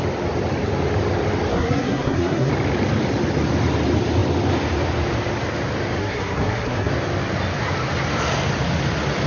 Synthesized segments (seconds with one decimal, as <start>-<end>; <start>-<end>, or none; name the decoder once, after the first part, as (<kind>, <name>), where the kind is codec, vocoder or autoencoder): 1.5-2.5 (codec, SNAC); 6.0-6.9